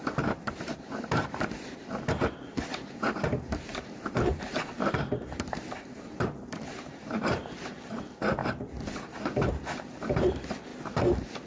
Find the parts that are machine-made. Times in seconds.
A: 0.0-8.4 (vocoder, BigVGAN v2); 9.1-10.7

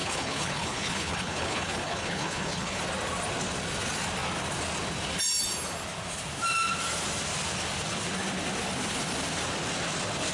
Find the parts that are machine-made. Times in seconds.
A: 0.0-2.8 (codec, HILCodec)

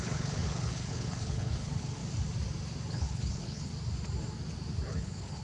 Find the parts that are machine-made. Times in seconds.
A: 0.0-2.0 (codec, HILCodec); 2.9-3.7; 4.9-5.4

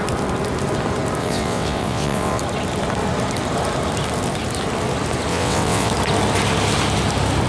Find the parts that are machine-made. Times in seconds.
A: 1.2-2.4 (vocoder, WaveNeXt); 5.3-5.9